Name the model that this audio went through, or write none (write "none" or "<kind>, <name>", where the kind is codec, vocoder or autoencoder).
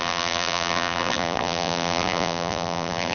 vocoder, BigVGAN v2